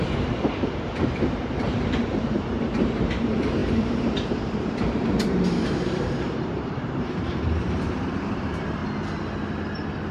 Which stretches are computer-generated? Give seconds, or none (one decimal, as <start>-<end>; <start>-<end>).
0.0-8.8

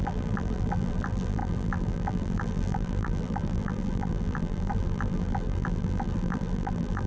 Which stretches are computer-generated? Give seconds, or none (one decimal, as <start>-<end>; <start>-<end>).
0.0-7.1

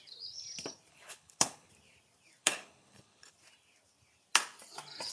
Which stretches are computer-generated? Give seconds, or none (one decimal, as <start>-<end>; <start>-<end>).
0.9-1.7; 2.4-3.3

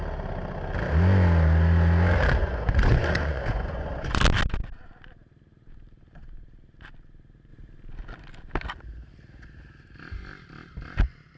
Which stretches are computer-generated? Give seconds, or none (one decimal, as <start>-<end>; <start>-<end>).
2.4-4.2

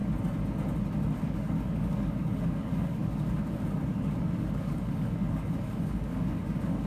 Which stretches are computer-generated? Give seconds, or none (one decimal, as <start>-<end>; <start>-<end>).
1.2-6.9